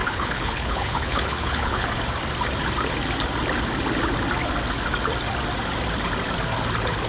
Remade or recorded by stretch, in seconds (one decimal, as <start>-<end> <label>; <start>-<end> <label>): 0.0-1.9 remade; 1.9-7.1 recorded

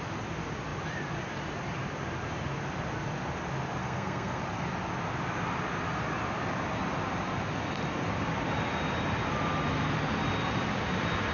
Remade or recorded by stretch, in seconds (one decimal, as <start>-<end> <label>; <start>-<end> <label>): 0.0-3.8 recorded; 3.8-4.4 remade; 4.4-11.3 recorded

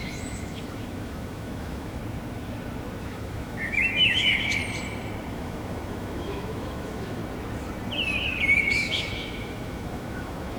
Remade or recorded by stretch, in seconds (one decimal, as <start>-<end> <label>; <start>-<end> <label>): 0.0-2.0 remade; 2.0-3.0 recorded; 3.0-4.6 remade; 4.6-5.3 recorded; 5.3-7.2 remade; 7.2-8.6 recorded; 8.6-10.6 remade

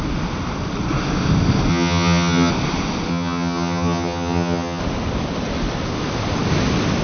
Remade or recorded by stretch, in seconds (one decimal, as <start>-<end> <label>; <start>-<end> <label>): 0.0-1.7 recorded; 1.7-2.5 remade; 2.5-3.1 recorded; 3.1-4.8 remade; 4.8-7.0 recorded